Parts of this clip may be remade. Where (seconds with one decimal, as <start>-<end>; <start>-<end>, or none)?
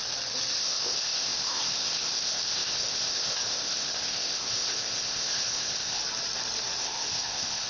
0.6-6.0; 6.8-7.7